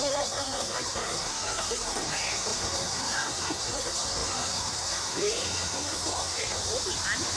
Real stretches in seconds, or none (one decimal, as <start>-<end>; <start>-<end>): 6.6-7.4